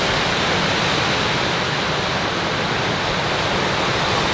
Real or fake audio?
real